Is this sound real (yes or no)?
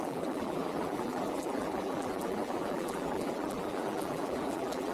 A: no